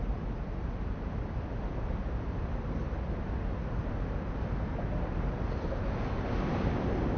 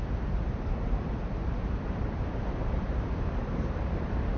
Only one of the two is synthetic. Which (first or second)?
second